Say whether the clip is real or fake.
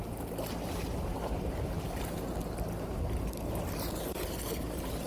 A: real